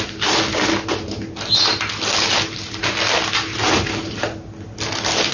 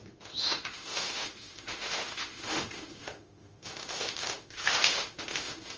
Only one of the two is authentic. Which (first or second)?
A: first